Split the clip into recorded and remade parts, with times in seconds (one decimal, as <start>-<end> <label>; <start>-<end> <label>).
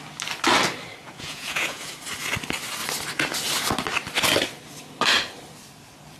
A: 0.0-1.0 recorded; 1.0-1.9 remade; 1.9-6.2 recorded